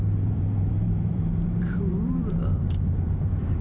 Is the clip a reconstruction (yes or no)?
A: yes